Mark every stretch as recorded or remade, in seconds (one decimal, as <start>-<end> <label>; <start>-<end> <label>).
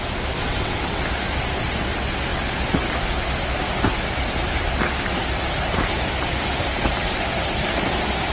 0.0-0.4 recorded; 0.4-1.0 remade; 1.0-8.3 recorded